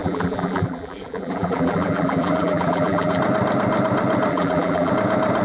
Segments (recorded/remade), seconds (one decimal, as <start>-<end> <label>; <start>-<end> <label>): 0.0-3.2 remade; 3.2-4.3 recorded; 4.3-4.9 remade; 4.9-5.4 recorded